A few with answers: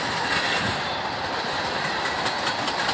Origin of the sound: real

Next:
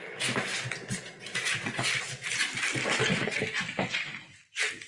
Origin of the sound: real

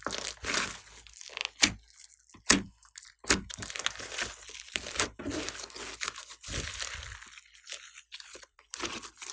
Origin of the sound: real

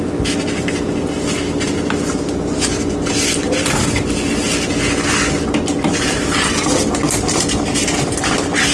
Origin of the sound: real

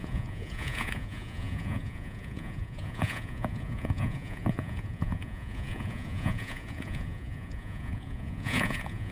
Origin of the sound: fake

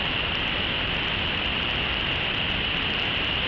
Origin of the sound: real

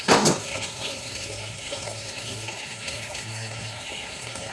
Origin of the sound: fake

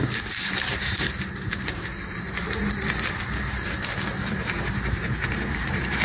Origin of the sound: fake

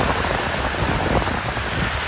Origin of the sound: real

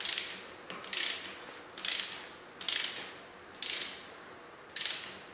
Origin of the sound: real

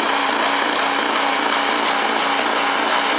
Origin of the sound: real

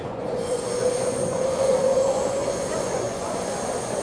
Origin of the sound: fake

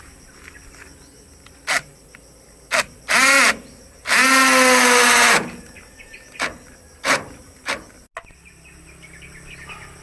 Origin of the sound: real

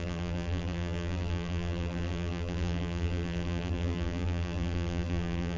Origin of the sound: fake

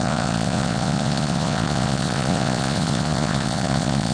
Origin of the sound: fake